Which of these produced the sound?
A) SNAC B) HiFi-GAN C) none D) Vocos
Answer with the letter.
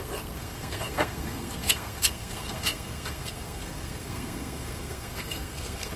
A